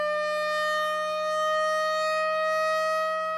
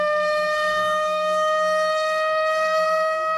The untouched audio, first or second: first